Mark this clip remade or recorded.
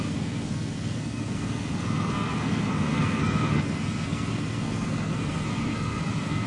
remade